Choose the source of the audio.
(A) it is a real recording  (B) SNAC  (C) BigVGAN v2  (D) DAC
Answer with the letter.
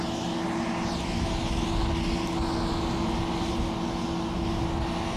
A